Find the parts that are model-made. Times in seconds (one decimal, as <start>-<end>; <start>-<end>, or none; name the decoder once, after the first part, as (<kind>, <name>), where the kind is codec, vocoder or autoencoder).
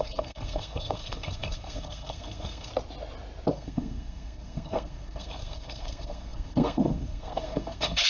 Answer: 0.0-2.7 (codec, SNAC); 3.5-8.1